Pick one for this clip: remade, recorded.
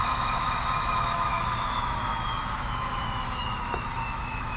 remade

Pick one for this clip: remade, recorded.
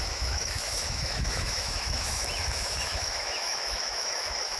remade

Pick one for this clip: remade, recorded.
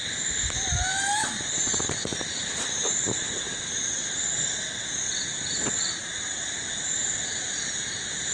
recorded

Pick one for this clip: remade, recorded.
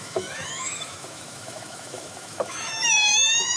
remade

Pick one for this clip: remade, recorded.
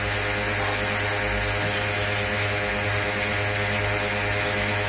recorded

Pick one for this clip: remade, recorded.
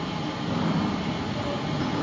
recorded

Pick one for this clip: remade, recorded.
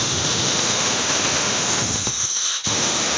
remade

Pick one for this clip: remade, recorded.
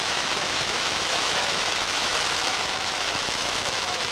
remade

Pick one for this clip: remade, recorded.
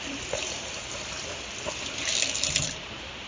recorded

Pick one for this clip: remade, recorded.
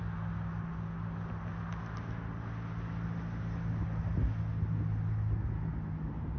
recorded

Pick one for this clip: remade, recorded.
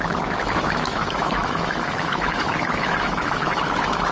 remade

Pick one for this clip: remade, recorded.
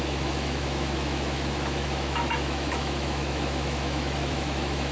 remade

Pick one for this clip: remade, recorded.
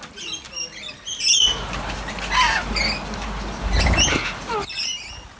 recorded